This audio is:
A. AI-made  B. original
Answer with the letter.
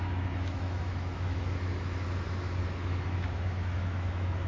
A